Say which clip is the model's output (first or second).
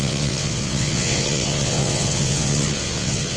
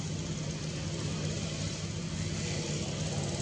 first